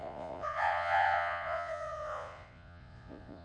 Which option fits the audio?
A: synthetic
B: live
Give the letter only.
A